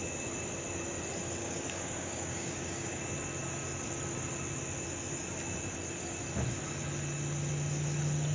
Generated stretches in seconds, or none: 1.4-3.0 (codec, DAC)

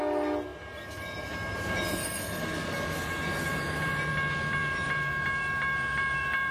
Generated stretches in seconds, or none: 3.5-4.1 (vocoder, BigVGAN v2); 4.6-6.5

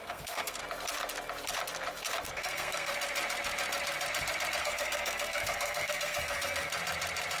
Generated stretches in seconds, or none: 0.0-0.6 (codec, SNAC); 2.3-2.9; 4.6-6.7

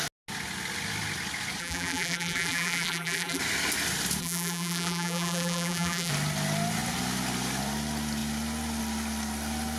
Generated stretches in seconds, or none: 1.6-3.4 (vocoder, BigVGAN v2); 4.2-6.1

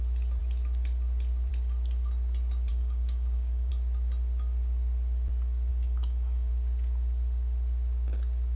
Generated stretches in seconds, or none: 2.7-3.7 (codec, DAC); 5.7-6.5

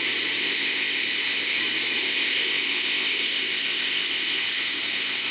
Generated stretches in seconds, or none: 0.4-1.6 (codec, ZipCodec); 2.0-5.3

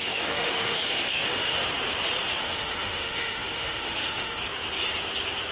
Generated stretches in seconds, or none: 0.0-1.6 (autoencoder, DAC-VAE); 2.4-4.4